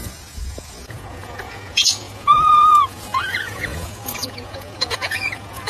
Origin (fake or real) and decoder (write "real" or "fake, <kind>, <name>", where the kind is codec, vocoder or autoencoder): fake, vocoder, Vocos